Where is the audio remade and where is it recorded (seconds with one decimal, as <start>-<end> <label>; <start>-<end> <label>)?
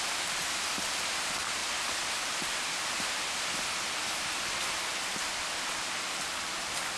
0.0-7.0 recorded